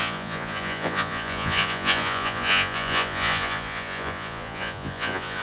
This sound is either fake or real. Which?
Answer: fake